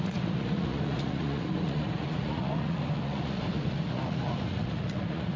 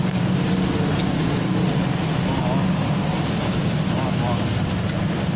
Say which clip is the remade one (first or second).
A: first